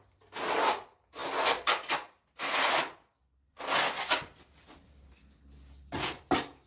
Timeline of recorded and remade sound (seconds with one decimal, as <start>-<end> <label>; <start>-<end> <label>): 0.0-6.7 recorded